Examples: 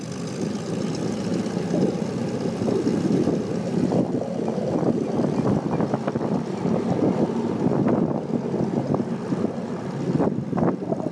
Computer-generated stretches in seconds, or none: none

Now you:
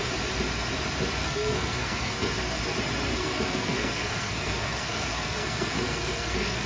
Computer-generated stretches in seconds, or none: 1.2-2.6 (codec, SNAC); 3.2-6.7

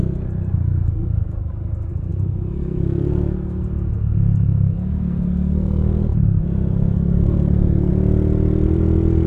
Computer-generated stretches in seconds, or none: 0.0-7.9 (codec, SNAC)

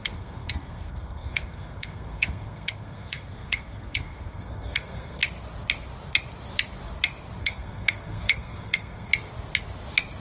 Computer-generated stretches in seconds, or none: 0.0-5.2 (codec, SNAC); 7.4-9.1

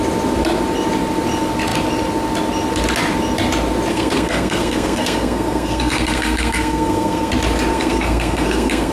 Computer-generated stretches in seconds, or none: 3.9-7.3 (codec, SNAC); 7.7-8.9